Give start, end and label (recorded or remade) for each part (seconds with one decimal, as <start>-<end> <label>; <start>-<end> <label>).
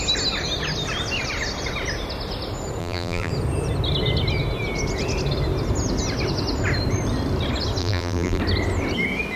0.0-2.8 recorded; 2.8-3.3 remade; 3.3-7.8 recorded; 7.8-8.4 remade; 8.4-9.4 recorded